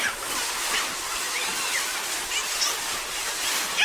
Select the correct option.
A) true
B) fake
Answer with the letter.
A